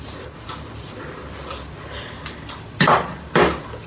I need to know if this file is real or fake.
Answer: real